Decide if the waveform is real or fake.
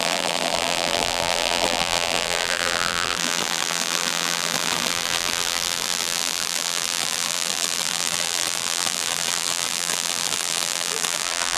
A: fake